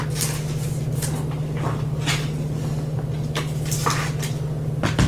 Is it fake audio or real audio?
real